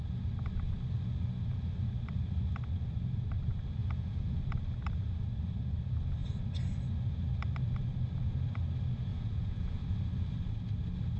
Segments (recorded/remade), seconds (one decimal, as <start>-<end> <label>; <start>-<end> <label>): 0.0-3.8 recorded; 3.8-4.4 remade; 4.4-9.1 recorded; 9.1-9.8 remade; 9.8-11.2 recorded

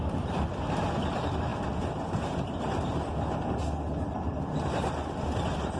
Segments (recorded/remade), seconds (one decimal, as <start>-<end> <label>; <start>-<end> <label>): 0.0-5.8 remade

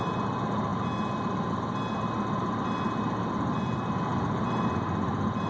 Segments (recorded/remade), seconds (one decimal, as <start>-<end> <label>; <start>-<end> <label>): 0.0-0.7 remade; 0.7-3.3 recorded; 3.3-5.5 remade

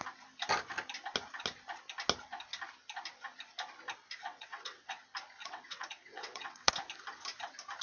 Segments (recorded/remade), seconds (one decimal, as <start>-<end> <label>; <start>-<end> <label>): 0.0-4.2 recorded; 4.2-5.0 remade; 5.0-5.4 recorded; 5.4-6.7 remade; 6.7-7.8 recorded

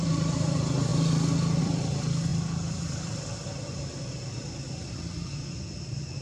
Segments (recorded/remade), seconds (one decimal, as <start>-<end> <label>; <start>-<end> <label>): 0.0-0.9 remade; 0.9-1.6 recorded; 1.6-6.2 remade